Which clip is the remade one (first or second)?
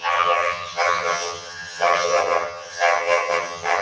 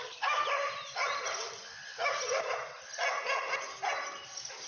first